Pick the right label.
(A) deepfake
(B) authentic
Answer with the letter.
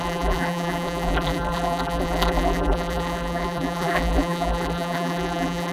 A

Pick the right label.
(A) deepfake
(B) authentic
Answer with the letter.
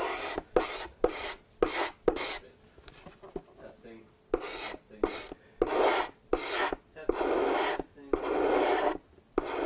B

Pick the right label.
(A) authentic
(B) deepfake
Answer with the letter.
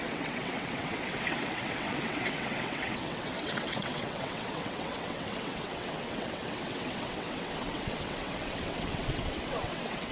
B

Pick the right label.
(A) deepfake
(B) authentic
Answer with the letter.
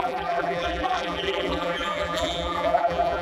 A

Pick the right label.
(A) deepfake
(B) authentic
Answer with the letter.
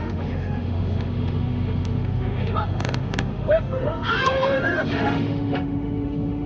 A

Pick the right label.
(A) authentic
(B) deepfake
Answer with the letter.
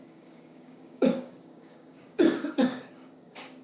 B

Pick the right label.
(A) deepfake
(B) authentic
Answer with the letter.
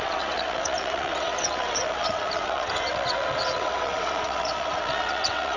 A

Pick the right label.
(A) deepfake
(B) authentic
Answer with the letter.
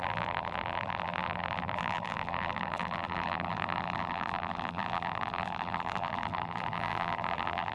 A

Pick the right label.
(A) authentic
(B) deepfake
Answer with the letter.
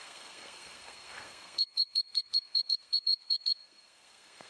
B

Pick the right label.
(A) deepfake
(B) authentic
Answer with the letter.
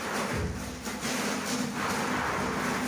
B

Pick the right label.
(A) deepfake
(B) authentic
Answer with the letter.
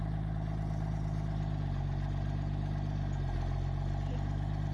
B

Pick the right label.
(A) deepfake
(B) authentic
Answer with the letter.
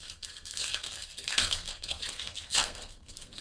A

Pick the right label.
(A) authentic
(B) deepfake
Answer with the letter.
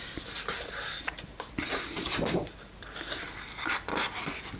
A